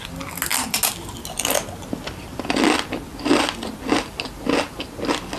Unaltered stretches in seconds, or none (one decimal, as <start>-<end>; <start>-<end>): 0.0-5.4